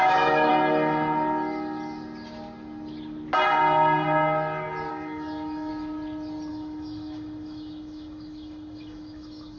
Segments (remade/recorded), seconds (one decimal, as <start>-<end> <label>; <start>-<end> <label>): 0.0-0.5 remade; 0.5-4.9 recorded; 4.9-5.7 remade; 5.7-6.5 recorded; 6.5-9.6 remade